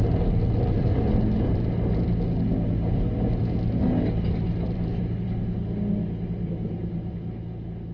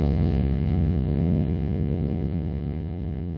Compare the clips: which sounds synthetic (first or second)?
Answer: second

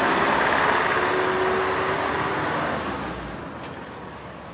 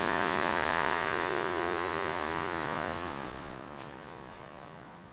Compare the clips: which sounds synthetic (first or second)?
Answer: second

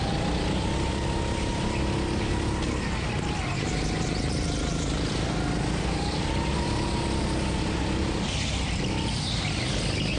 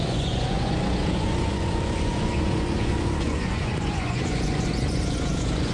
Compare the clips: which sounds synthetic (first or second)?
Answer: second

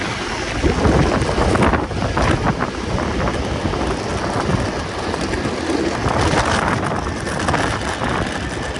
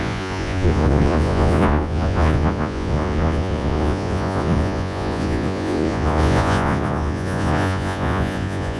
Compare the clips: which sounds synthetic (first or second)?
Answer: second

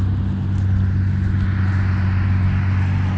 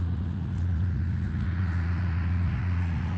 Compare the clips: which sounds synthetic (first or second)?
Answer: second